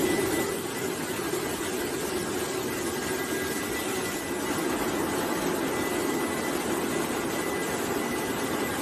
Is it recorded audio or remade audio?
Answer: recorded